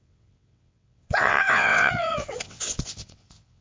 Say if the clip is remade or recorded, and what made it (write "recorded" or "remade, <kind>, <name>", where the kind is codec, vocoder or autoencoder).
remade, vocoder, WaveNeXt